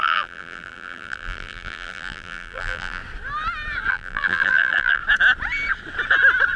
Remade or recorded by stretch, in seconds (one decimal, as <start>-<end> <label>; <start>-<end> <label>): 0.0-3.0 remade; 3.0-3.9 recorded; 3.9-5.0 remade; 5.0-6.6 recorded